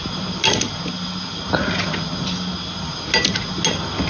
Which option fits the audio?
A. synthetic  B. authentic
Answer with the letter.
B